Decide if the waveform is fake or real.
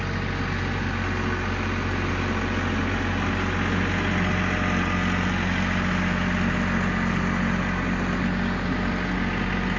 real